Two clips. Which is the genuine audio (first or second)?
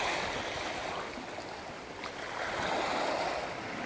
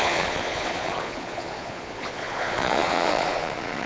first